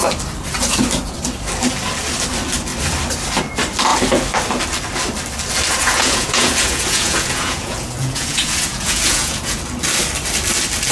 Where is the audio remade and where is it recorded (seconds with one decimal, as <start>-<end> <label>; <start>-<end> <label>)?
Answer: 0.0-5.8 recorded; 5.8-9.6 remade; 9.6-10.9 recorded